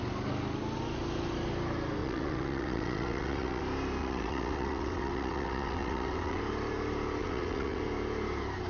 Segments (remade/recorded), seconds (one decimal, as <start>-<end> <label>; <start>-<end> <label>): 0.0-2.0 recorded; 2.0-3.6 remade; 3.6-4.0 recorded; 4.0-6.4 remade; 6.4-7.2 recorded; 7.2-7.8 remade; 7.8-8.7 recorded